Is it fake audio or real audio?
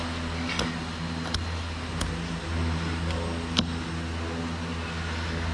real